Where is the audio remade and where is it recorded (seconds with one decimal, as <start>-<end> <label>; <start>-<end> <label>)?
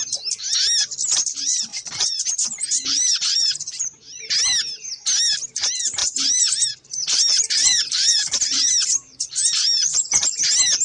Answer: 0.0-1.7 recorded; 1.7-4.2 remade; 4.2-6.0 recorded; 6.0-10.4 remade; 10.4-10.8 recorded